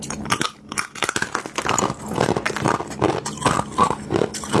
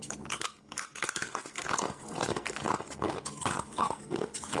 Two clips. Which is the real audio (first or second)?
first